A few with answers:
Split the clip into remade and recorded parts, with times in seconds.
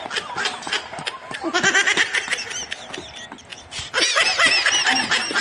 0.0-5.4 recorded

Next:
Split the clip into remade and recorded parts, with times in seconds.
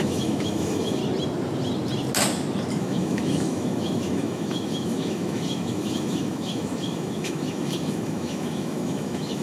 0.0-1.0 remade; 1.0-2.8 recorded; 2.8-9.4 remade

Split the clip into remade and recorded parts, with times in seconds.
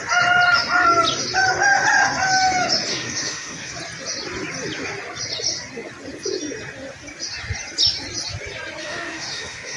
0.0-2.9 recorded; 2.9-3.7 remade; 3.7-8.8 recorded; 8.8-9.8 remade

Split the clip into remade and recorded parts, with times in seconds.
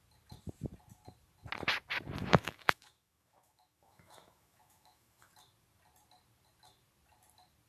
0.0-2.2 recorded; 2.2-5.3 remade; 5.3-7.7 recorded